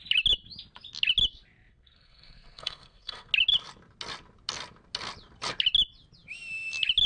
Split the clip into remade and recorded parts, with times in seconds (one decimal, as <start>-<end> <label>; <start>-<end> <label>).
0.0-1.7 recorded; 1.7-3.3 remade; 3.3-7.1 recorded